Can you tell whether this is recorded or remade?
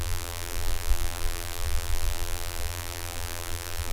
remade